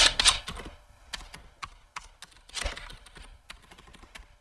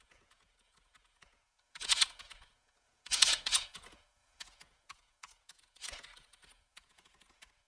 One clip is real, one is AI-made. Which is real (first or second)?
first